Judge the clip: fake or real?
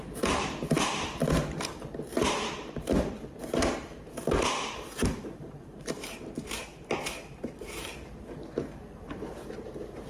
fake